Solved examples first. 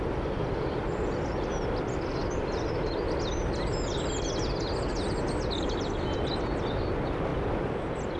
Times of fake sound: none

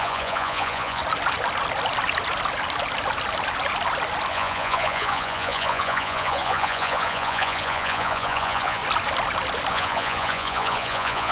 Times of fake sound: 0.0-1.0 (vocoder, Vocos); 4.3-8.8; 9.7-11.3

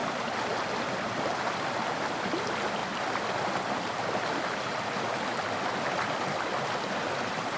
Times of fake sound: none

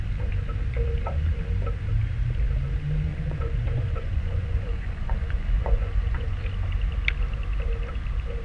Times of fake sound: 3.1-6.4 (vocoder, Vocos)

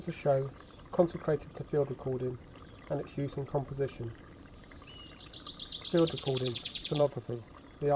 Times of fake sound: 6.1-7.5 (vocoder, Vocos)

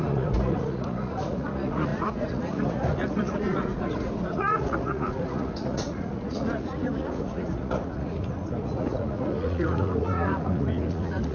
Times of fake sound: 0.0-11.3 (vocoder, Vocos)

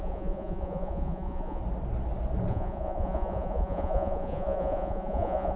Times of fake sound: 0.0-1.6 (vocoder, Vocos); 2.5-5.6

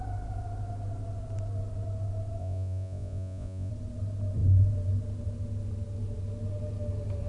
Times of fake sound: 2.4-3.7 (vocoder, Vocos)